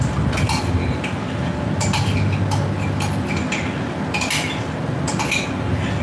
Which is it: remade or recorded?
recorded